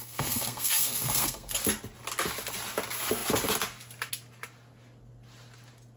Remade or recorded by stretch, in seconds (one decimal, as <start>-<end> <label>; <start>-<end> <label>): 0.0-1.6 remade; 1.6-6.0 recorded